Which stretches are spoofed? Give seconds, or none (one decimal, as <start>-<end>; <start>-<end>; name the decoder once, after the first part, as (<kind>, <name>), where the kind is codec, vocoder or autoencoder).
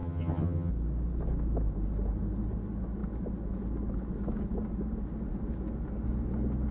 0.0-0.7 (vocoder, HiFi-GAN)